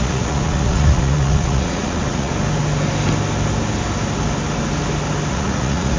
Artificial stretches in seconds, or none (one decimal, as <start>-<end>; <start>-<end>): 0.0-2.3; 5.3-6.0